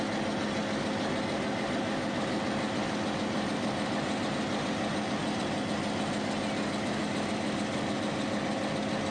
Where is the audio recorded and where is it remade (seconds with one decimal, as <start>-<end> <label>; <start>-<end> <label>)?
0.0-9.1 recorded